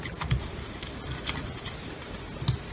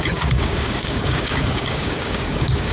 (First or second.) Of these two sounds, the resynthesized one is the second